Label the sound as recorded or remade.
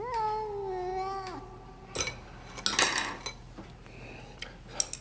recorded